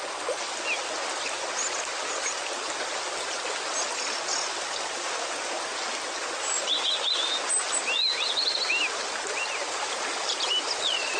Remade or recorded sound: recorded